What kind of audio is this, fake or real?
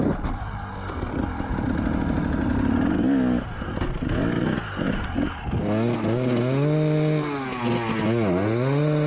real